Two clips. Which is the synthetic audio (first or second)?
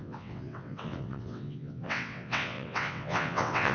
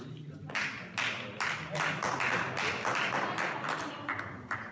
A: first